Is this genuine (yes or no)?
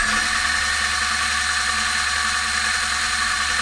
yes